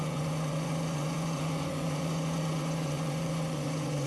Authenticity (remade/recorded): remade